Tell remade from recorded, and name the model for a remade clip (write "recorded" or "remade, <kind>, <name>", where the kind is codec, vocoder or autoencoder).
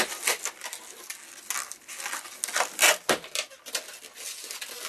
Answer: recorded